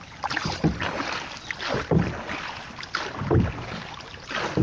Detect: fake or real real